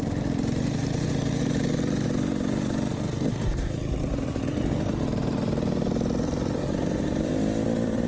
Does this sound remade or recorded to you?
recorded